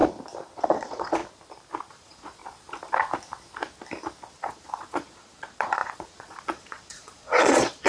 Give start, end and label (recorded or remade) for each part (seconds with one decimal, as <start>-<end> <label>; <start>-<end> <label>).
0.0-0.6 recorded; 0.6-1.2 remade; 1.2-1.9 recorded; 1.9-2.4 remade; 2.4-4.3 recorded; 4.3-7.9 remade